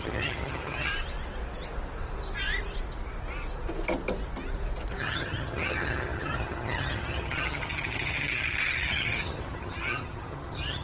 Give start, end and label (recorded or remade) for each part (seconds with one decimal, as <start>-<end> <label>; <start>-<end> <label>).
0.0-0.9 remade; 0.9-5.0 recorded; 5.0-10.8 remade